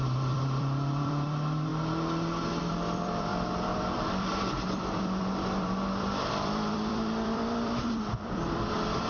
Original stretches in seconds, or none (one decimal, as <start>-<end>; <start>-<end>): 1.7-2.6